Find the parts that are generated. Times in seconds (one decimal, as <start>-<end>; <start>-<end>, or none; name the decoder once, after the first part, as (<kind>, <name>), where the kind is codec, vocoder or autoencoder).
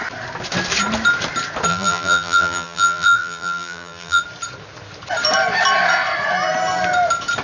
1.7-4.2 (vocoder, BigVGAN v2)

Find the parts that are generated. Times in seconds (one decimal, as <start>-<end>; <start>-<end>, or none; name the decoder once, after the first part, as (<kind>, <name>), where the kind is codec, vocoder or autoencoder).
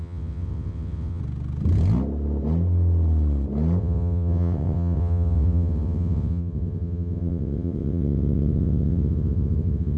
0.0-1.2 (vocoder, WaveNeXt); 3.8-10.0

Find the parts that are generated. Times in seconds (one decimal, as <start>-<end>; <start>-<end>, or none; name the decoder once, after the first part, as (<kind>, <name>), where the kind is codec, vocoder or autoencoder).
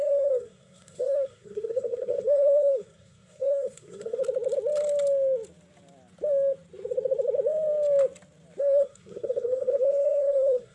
0.0-4.2 (codec, SNAC); 8.6-10.7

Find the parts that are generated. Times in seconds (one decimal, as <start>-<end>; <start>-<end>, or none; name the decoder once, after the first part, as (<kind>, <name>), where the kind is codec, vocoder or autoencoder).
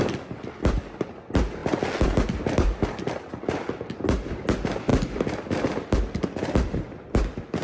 4.9-7.0 (vocoder, BigVGAN v2)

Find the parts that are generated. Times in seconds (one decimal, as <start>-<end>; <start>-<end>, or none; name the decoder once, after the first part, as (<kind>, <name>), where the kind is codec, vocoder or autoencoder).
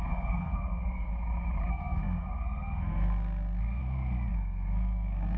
0.0-1.1 (codec, SNAC); 1.7-3.8; 4.3-5.4